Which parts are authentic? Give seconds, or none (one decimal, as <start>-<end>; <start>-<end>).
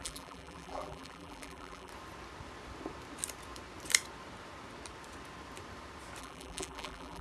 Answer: 1.9-6.2